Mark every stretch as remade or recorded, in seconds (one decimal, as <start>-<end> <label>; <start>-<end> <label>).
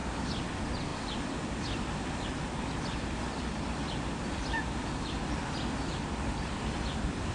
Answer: 0.0-0.5 recorded; 0.5-7.3 remade